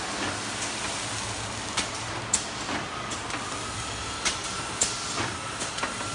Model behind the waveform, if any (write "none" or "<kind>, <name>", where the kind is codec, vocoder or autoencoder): none